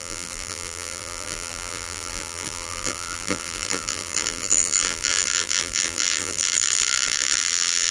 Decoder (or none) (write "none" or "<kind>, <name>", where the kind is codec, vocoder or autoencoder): vocoder, BigVGAN v2